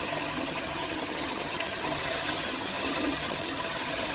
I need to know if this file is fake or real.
fake